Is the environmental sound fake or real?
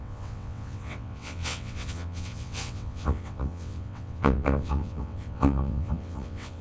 fake